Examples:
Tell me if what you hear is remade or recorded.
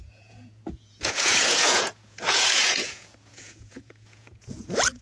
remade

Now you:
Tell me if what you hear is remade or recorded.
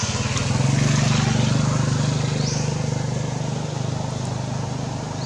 recorded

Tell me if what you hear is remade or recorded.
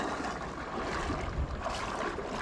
recorded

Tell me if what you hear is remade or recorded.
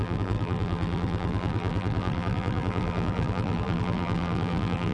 remade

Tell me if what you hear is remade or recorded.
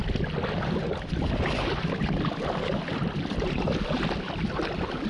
recorded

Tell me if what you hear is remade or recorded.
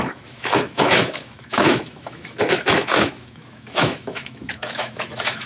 remade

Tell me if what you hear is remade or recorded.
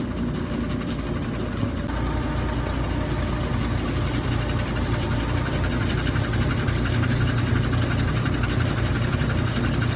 recorded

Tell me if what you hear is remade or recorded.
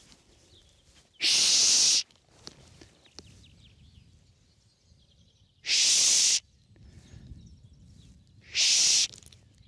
recorded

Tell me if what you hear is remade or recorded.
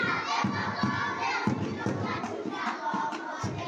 recorded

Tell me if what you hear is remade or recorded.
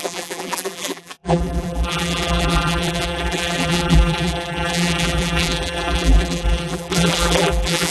remade